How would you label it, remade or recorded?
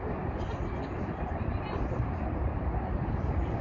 recorded